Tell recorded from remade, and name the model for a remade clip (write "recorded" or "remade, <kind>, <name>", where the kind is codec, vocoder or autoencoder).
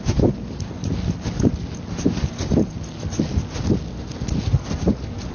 recorded